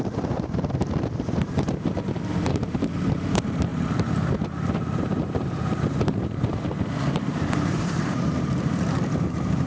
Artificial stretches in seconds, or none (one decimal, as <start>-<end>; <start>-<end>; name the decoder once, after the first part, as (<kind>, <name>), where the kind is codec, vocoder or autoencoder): 0.0-9.7 (vocoder, BigVGAN v2)